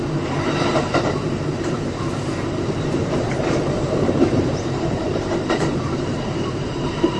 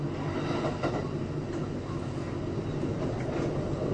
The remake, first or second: first